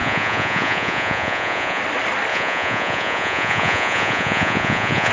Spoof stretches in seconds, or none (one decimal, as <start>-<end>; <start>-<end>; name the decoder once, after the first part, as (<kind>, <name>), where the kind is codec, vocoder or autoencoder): 0.0-1.8 (vocoder, Vocos); 2.3-5.1